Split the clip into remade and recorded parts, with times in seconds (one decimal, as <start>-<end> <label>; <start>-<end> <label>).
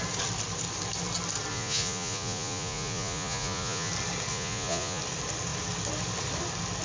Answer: 0.0-1.5 recorded; 1.5-3.9 remade; 3.9-4.3 recorded; 4.3-5.0 remade; 5.0-6.8 recorded